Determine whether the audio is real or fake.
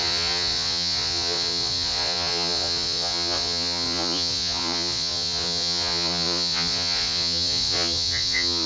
fake